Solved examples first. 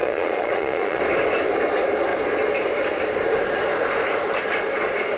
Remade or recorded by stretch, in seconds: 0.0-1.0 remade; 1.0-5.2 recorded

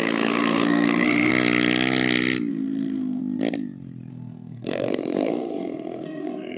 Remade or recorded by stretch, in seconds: 0.0-1.3 remade; 1.3-2.5 recorded; 2.5-3.2 remade; 3.2-4.1 recorded; 4.1-6.6 remade

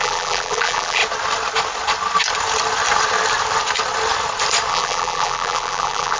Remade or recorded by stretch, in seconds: 0.0-1.0 remade; 1.0-4.7 recorded; 4.7-6.2 remade

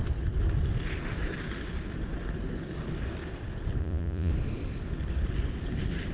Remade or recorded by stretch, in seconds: 0.0-3.8 recorded; 3.8-4.3 remade; 4.3-6.1 recorded

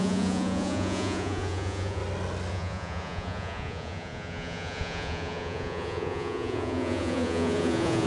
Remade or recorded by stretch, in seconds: 0.0-2.0 remade; 2.0-2.5 recorded; 2.5-8.1 remade